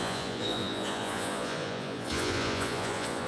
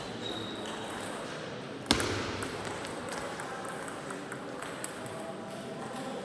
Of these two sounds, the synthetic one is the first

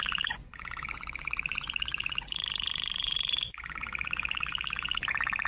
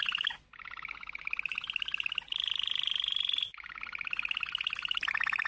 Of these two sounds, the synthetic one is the first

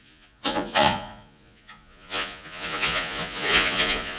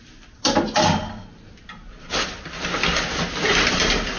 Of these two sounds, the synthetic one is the first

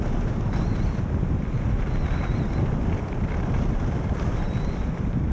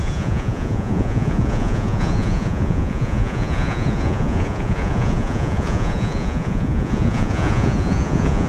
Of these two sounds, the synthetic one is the second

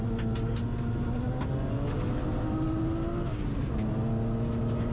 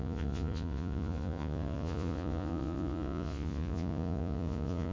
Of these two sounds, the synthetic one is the second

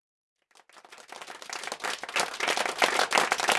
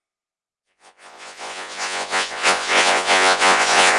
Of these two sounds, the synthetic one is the second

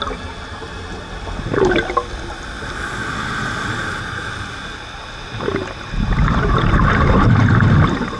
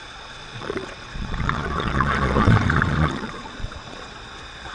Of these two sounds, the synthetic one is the second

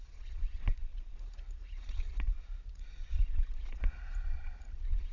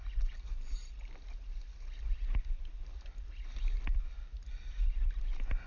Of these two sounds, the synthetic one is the first